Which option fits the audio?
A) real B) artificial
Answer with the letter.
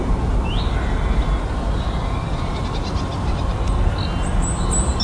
A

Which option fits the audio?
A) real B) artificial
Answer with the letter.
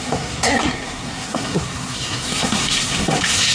B